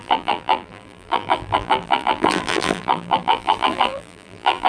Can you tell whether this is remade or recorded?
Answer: remade